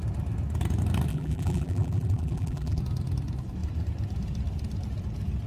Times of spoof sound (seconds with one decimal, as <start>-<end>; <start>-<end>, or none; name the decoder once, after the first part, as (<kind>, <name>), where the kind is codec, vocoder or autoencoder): 1.1-2.8 (vocoder, BigVGAN v2)